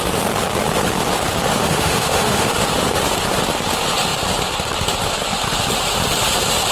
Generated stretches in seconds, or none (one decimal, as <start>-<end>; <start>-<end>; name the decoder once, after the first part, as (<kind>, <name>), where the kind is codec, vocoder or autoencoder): 1.6-2.5 (autoencoder, DAC-VAE)